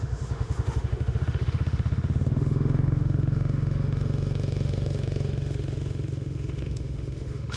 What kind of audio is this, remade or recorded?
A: remade